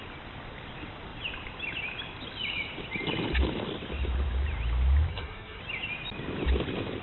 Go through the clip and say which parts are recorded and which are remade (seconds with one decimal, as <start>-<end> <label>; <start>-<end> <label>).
0.0-5.1 recorded; 5.1-5.6 remade; 5.6-7.0 recorded